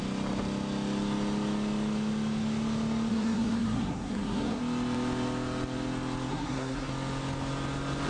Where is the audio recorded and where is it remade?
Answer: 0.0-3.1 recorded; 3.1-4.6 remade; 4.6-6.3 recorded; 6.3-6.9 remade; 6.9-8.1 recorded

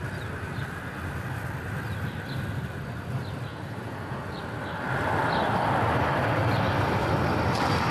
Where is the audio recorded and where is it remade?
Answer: 0.0-3.5 recorded; 3.5-4.3 remade; 4.3-7.9 recorded

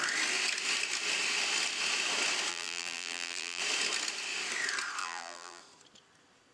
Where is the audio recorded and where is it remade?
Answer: 0.0-2.5 recorded; 2.5-3.6 remade; 3.6-5.0 recorded; 5.0-5.6 remade; 5.6-6.5 recorded

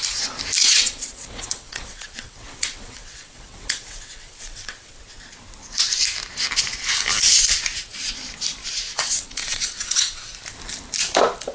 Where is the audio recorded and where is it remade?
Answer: 0.0-0.6 recorded; 0.6-5.0 remade; 5.0-8.9 recorded; 8.9-10.3 remade; 10.3-11.5 recorded